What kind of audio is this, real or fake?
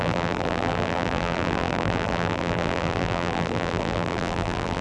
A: fake